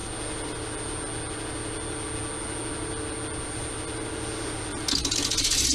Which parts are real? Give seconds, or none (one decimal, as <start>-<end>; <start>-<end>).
0.0-5.7